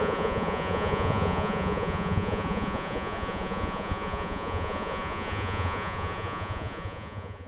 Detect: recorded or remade remade